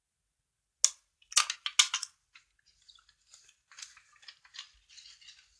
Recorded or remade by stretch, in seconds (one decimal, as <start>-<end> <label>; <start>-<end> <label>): 0.0-5.6 recorded